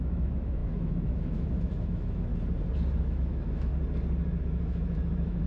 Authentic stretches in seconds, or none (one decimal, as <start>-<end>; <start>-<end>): 2.3-3.0; 3.7-4.4